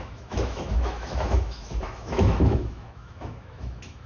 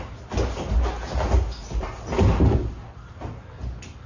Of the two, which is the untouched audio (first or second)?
second